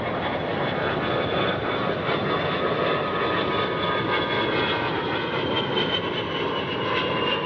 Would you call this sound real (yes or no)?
yes